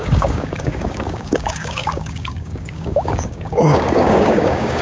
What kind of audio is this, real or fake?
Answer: fake